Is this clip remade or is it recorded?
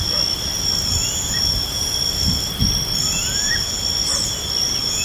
recorded